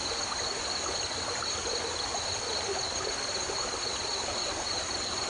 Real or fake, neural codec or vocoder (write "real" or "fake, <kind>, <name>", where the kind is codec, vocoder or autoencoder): real